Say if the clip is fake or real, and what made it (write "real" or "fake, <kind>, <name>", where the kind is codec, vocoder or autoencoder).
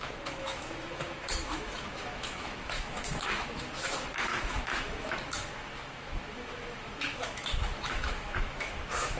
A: fake, autoencoder, DAC-VAE